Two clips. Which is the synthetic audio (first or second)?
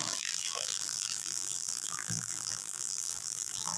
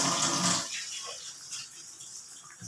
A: first